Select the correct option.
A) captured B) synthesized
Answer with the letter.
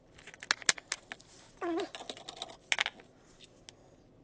A